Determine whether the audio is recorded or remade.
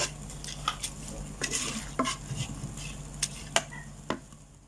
recorded